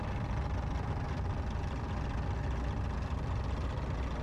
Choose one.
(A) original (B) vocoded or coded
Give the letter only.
A